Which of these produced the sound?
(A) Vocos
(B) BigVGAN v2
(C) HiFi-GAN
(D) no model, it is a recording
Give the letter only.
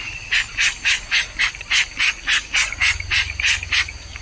D